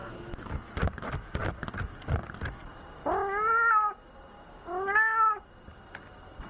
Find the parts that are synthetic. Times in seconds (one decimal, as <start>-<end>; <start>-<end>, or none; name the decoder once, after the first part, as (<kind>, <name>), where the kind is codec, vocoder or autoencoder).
0.0-0.8 (autoencoder, DAC-VAE)